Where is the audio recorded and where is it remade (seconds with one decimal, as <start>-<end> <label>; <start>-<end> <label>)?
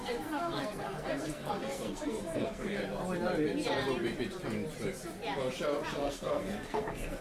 0.0-2.8 remade; 2.8-6.0 recorded; 6.0-7.2 remade